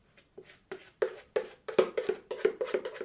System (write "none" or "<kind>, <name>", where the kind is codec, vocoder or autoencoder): none